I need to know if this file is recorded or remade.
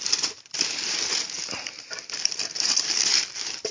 remade